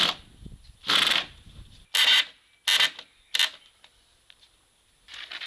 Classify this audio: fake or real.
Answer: real